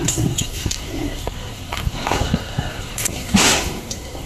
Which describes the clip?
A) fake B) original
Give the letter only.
A